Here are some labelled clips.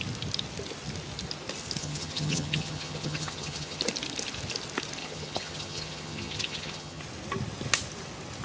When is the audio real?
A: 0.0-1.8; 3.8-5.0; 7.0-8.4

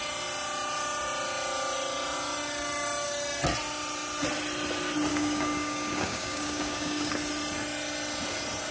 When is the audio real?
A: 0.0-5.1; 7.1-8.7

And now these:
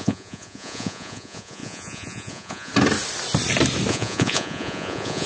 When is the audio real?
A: 2.7-3.9